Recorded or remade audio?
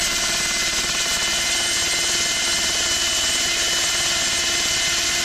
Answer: recorded